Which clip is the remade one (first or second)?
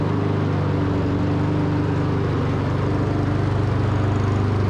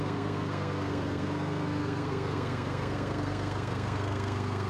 second